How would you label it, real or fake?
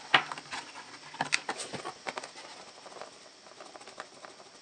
real